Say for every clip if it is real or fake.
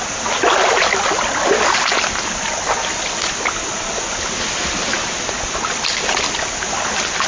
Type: real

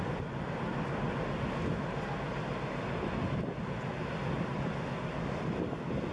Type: real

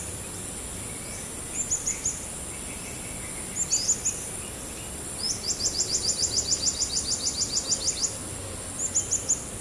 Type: real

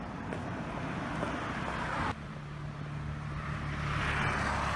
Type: real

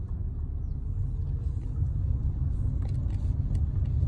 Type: real